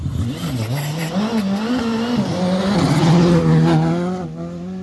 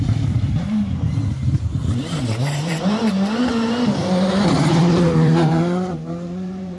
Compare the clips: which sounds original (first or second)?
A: first